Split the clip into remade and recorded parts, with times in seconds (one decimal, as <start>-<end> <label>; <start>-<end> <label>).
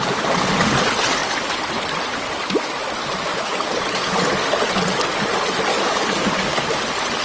0.0-2.1 recorded; 2.1-2.9 remade; 2.9-3.3 recorded; 3.3-4.1 remade; 4.1-5.7 recorded; 5.7-6.8 remade; 6.8-7.2 recorded